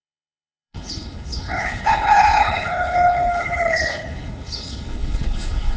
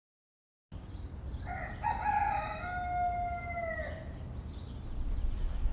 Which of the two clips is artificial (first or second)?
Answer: first